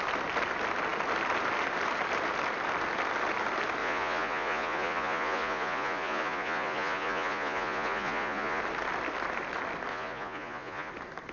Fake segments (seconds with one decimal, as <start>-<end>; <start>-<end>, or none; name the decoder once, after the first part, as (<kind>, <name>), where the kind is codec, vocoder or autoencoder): 3.8-8.6 (vocoder, Vocos); 9.9-10.9